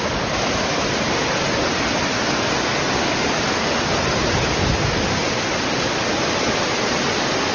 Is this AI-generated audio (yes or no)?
no